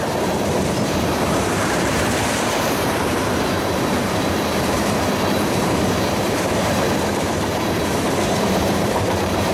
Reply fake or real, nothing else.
fake